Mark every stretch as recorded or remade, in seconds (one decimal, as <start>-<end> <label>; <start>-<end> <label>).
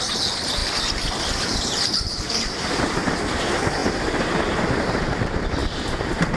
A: 0.0-0.6 remade; 0.6-1.6 recorded; 1.6-6.4 remade